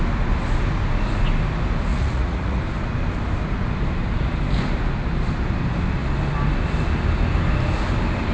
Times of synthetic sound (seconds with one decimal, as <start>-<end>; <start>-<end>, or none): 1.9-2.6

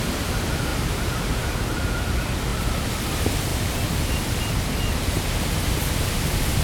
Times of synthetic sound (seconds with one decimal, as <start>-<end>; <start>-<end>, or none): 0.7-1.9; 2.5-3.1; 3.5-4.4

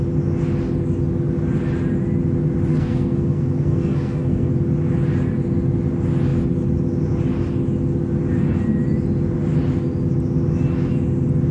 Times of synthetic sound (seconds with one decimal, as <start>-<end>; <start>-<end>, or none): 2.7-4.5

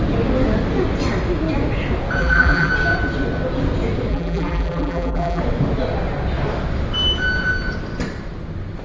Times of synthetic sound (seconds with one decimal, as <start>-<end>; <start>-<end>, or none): 2.2-2.7; 4.1-5.4